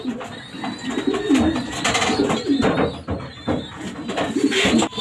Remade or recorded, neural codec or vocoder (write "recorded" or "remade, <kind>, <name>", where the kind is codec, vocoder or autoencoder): recorded